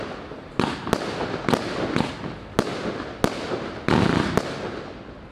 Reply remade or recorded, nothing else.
recorded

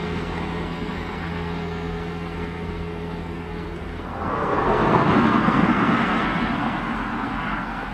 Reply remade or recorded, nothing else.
remade